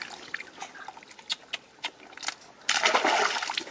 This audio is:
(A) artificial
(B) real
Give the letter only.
B